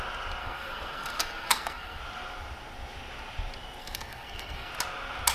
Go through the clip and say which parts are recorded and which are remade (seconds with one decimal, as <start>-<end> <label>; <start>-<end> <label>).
0.0-0.4 recorded; 0.4-2.0 remade; 2.0-3.8 recorded; 3.8-4.7 remade; 4.7-5.3 recorded